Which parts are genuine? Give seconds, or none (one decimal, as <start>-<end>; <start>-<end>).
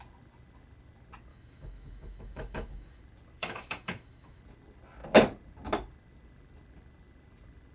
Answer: 0.0-1.3; 3.0-3.4; 4.4-7.7